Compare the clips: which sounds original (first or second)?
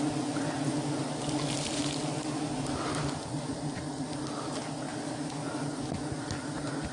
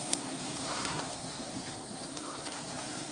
first